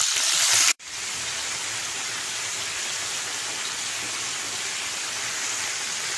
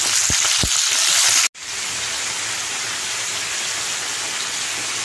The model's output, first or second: first